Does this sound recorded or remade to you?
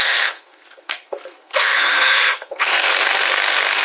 remade